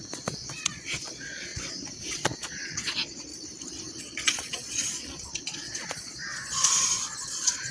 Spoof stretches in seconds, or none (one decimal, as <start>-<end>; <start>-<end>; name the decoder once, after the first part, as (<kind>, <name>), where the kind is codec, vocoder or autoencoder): 0.0-3.3 (vocoder, Vocos); 4.0-7.7

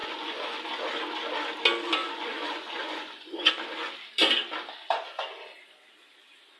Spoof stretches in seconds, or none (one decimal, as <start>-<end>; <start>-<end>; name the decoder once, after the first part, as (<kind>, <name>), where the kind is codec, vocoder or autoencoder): 0.0-0.6 (vocoder, Vocos); 2.0-3.5

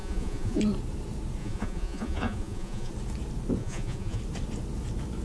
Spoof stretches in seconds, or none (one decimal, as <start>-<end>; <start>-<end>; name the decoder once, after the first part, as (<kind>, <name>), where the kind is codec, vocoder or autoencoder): 0.0-0.6 (vocoder, Vocos); 1.4-2.9; 3.6-4.2